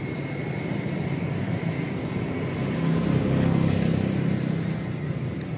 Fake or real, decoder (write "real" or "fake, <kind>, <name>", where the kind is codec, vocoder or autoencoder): real